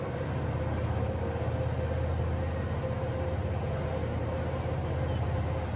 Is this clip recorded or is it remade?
recorded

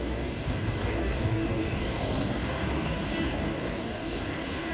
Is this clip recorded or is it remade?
remade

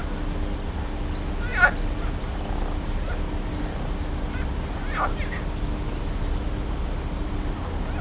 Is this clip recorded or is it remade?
recorded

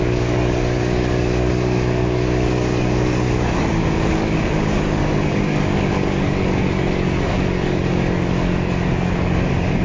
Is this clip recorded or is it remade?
remade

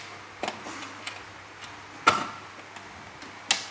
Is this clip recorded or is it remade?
recorded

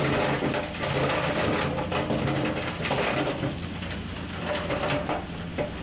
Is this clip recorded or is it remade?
recorded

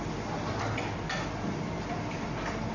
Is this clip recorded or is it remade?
recorded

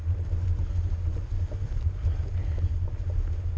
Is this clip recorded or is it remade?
recorded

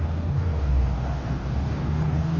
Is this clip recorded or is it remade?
remade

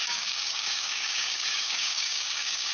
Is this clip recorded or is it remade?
remade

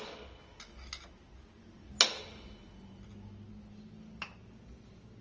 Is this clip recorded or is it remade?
recorded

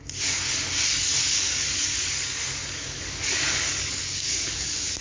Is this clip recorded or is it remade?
remade